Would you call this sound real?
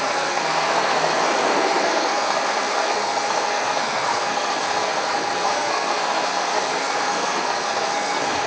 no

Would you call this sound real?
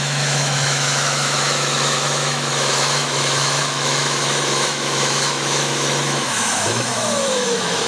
no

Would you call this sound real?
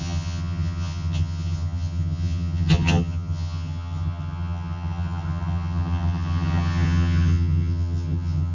no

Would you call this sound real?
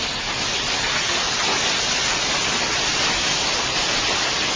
no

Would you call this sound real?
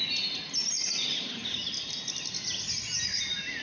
yes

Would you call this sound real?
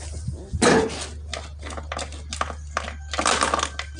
yes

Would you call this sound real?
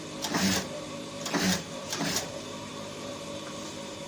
no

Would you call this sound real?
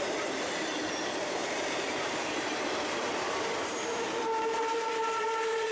no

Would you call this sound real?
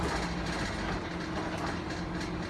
yes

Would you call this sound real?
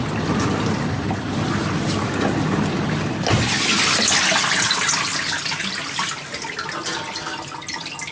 yes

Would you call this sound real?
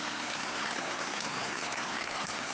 no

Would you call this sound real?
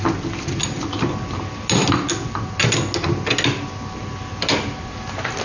yes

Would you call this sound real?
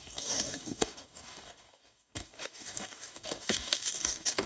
no